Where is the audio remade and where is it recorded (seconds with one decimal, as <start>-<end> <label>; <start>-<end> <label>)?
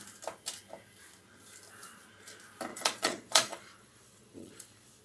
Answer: 0.0-2.7 recorded; 2.7-5.0 remade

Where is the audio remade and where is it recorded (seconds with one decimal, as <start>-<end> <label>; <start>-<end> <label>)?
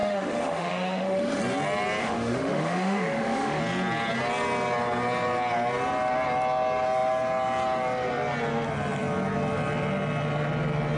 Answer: 0.0-1.4 remade; 1.4-2.0 recorded; 2.0-3.6 remade; 3.6-11.0 recorded